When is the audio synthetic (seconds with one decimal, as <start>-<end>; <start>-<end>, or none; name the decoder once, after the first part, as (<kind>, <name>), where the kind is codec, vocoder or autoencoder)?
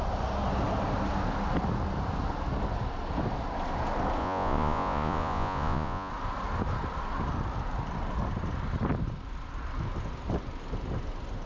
4.2-6.1 (vocoder, Vocos)